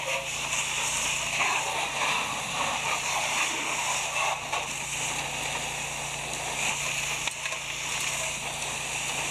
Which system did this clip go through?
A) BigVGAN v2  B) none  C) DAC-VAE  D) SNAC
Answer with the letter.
B